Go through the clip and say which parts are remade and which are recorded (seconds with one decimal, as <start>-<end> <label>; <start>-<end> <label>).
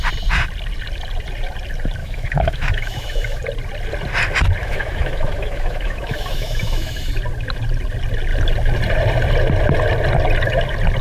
0.0-2.0 recorded; 2.0-3.4 remade; 3.4-4.6 recorded; 4.6-7.1 remade; 7.1-11.0 recorded